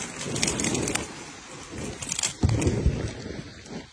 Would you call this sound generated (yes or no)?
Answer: no